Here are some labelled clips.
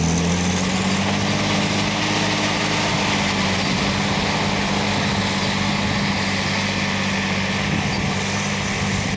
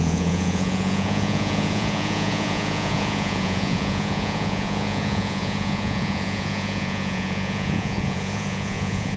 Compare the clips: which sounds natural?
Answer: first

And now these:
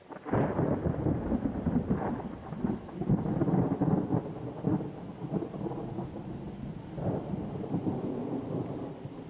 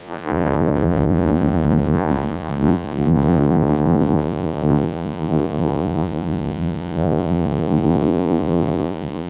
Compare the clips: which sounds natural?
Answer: first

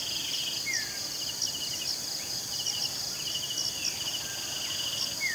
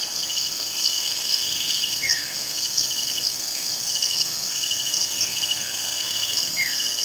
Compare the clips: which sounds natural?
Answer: first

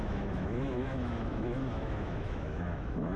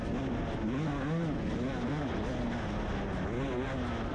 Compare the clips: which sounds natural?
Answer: second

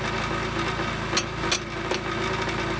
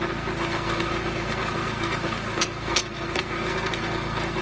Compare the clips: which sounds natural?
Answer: first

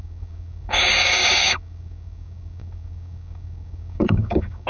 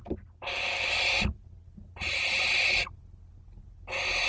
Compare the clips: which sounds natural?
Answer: second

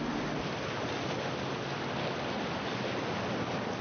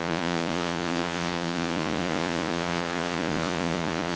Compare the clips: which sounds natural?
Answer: first